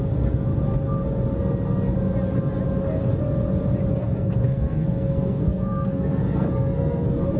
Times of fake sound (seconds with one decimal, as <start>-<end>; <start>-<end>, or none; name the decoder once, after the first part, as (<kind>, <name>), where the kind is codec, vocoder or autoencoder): 0.0-0.5 (codec, SNAC); 3.9-7.4